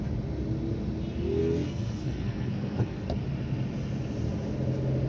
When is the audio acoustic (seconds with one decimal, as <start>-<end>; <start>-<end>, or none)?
0.0-1.4; 3.2-5.1